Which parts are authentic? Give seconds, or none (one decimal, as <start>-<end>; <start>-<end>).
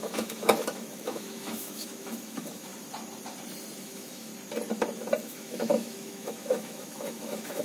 2.7-3.8; 4.3-5.2